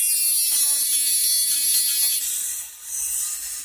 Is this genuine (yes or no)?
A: yes